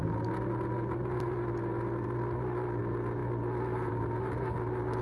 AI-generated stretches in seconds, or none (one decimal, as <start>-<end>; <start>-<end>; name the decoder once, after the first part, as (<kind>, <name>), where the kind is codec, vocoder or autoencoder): none